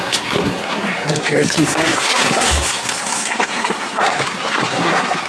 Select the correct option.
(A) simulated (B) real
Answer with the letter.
A